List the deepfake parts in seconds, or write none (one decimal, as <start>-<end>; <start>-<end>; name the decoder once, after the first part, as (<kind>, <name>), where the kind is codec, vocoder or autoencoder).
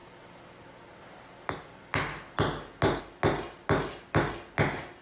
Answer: none